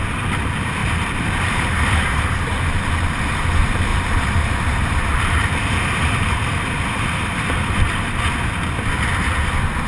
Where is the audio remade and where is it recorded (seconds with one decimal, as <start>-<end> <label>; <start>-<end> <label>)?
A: 0.0-0.8 recorded; 0.8-2.8 remade; 2.8-3.9 recorded; 3.9-8.2 remade; 8.2-9.9 recorded